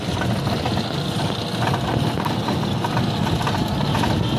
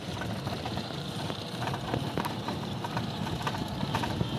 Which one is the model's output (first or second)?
second